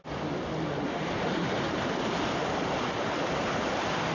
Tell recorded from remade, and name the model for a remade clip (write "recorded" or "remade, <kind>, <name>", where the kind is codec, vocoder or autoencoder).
recorded